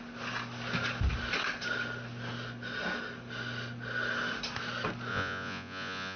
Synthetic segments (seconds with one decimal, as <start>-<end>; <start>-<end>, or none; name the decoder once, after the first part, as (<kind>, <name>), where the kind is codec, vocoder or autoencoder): 5.1-6.2 (vocoder, Vocos)

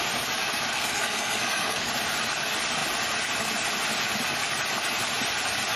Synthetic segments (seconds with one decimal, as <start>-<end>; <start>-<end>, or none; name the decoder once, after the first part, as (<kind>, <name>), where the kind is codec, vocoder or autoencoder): 0.7-1.9 (codec, SNAC)

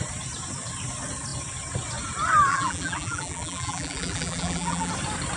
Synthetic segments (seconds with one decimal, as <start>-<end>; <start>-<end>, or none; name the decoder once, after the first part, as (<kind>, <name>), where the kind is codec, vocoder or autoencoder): 2.5-4.9 (vocoder, BigVGAN v2)